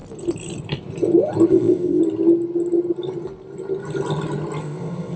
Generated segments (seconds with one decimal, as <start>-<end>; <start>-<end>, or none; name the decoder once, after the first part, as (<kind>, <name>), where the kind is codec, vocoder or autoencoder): 1.5-2.0 (codec, ZipCodec); 4.6-5.2